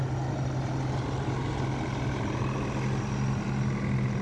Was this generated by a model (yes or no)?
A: no